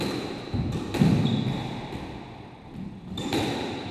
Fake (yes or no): no